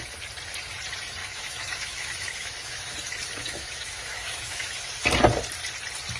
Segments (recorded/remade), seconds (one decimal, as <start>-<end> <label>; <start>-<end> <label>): 0.0-1.2 recorded; 1.2-4.9 remade; 4.9-6.2 recorded